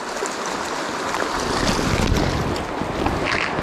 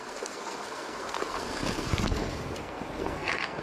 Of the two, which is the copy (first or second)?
second